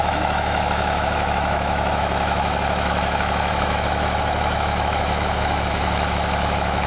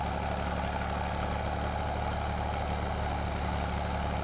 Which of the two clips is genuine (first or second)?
second